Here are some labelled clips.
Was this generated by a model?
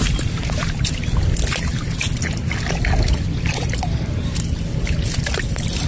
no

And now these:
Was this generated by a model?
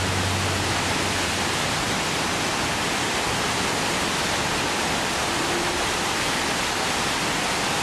no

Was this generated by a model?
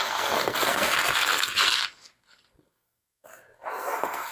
yes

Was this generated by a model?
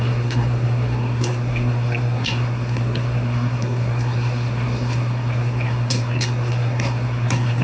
yes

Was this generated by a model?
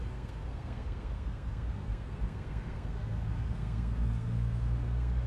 yes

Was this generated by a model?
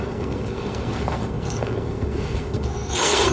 yes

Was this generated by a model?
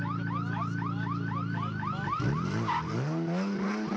no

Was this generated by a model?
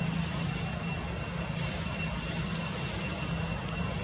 no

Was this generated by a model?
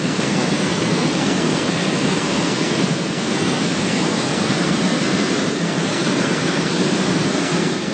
yes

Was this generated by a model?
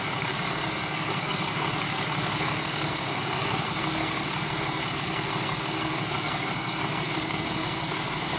yes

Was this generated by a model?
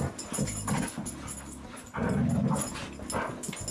no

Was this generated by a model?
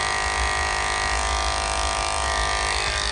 no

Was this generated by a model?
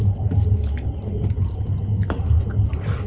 no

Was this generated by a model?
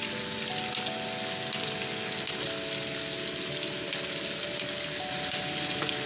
no